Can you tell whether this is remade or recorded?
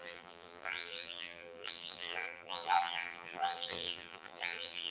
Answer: remade